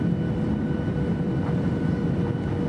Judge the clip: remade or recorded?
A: recorded